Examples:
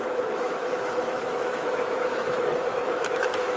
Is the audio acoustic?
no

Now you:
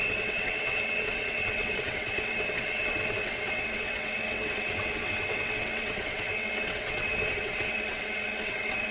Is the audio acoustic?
no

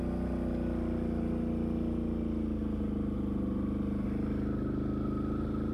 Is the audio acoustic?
yes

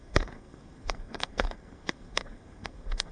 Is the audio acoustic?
no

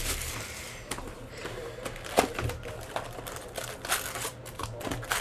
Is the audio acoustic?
yes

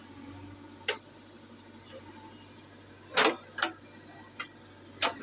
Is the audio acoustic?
yes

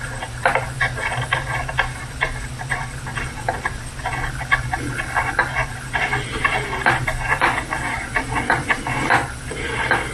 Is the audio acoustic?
yes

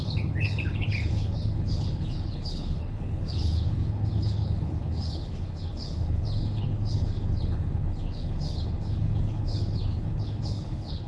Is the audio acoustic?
no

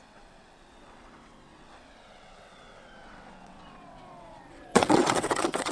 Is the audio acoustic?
no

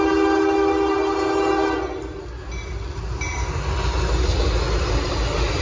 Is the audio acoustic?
yes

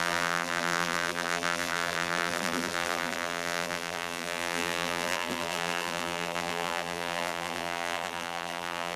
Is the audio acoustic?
no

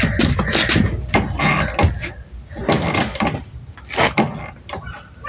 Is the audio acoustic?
yes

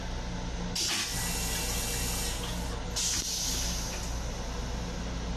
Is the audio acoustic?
yes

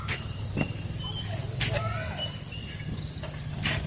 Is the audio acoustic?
yes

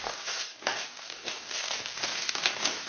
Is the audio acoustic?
no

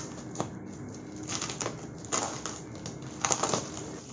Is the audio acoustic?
yes